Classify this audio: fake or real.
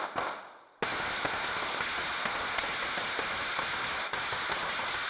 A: real